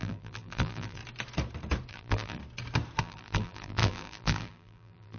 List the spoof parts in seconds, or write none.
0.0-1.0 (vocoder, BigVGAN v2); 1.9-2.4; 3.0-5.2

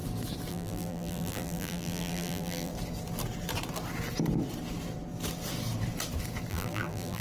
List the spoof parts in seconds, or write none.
0.5-2.7 (vocoder, BigVGAN v2); 6.5-7.2

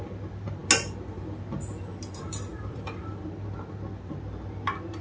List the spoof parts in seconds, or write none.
2.5-3.2 (vocoder, BigVGAN v2)

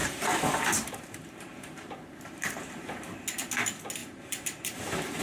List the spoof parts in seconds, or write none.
0.0-3.1 (vocoder, BigVGAN v2); 4.0-5.2